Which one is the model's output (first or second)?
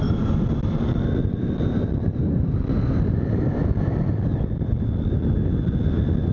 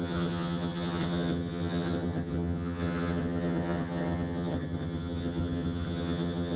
second